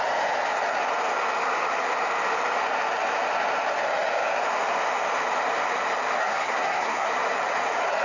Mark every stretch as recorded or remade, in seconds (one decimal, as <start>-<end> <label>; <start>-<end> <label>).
0.0-6.2 recorded; 6.2-7.1 remade; 7.1-8.0 recorded